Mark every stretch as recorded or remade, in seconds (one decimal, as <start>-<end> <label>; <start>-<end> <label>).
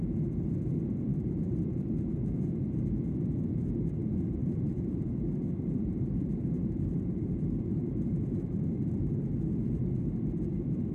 0.0-1.1 recorded; 1.1-1.7 remade; 1.7-4.4 recorded; 4.4-9.0 remade; 9.0-10.9 recorded